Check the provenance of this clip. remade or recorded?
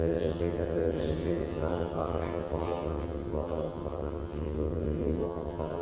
remade